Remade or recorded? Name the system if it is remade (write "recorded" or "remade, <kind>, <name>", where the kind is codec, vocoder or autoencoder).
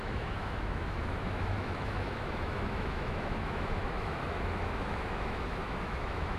remade, autoencoder, DAC-VAE